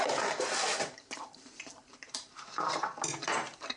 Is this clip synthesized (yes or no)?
yes